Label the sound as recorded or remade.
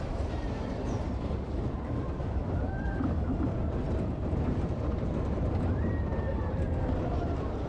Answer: remade